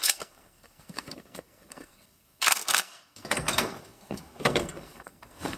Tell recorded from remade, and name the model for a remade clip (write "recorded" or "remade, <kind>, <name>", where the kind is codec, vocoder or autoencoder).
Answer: remade, codec, SNAC